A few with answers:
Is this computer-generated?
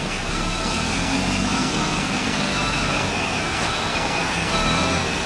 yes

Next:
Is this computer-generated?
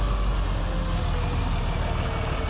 no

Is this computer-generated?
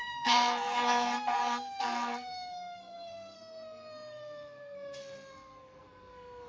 yes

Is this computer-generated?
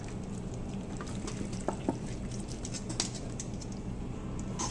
no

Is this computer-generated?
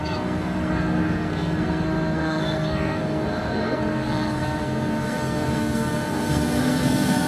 yes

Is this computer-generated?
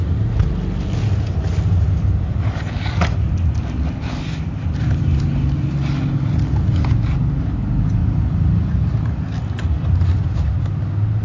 no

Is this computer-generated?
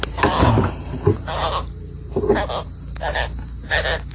no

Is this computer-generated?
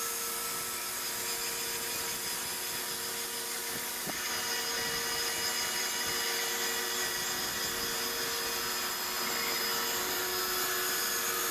no